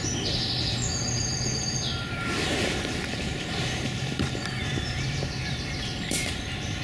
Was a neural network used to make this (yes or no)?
yes